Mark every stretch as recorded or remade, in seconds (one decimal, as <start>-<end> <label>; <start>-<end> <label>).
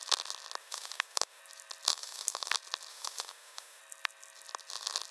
0.0-0.6 recorded; 0.6-1.4 remade; 1.4-1.9 recorded; 1.9-2.5 remade; 2.5-2.9 recorded; 2.9-3.8 remade; 3.8-5.1 recorded